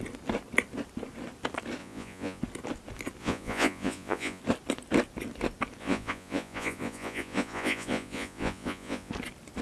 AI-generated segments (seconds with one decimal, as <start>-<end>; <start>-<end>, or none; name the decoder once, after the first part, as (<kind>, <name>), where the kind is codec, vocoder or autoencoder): 1.8-2.4 (vocoder, Vocos); 3.2-4.4; 5.8-9.1